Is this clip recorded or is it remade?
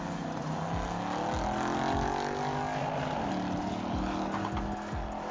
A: recorded